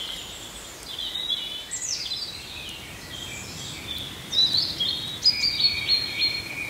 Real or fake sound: real